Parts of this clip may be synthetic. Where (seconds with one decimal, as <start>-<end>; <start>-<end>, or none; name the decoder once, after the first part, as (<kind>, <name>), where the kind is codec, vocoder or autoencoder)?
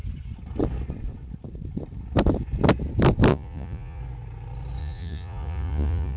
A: 3.3-4.0 (vocoder, Vocos); 4.8-6.2